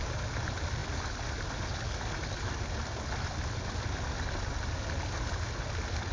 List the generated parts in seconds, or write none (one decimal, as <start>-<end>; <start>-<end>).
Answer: none